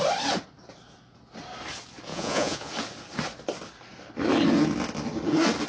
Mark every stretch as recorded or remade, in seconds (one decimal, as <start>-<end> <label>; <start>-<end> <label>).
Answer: 0.0-2.1 recorded; 2.1-2.7 remade; 2.7-5.7 recorded